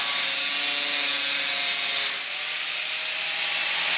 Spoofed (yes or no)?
no